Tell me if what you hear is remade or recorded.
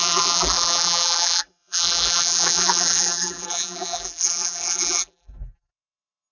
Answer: remade